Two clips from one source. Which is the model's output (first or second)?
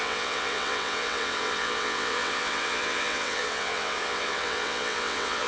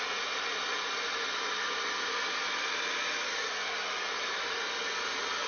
first